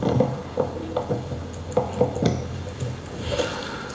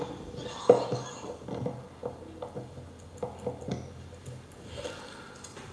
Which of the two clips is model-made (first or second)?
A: first